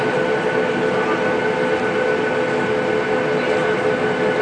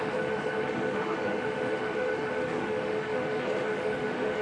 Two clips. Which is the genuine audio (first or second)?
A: first